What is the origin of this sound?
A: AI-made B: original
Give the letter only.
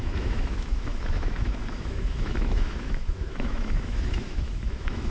A